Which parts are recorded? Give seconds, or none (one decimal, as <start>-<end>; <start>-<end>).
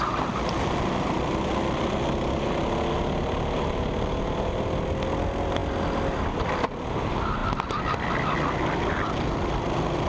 0.0-10.1